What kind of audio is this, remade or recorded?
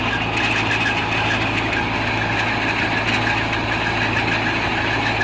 recorded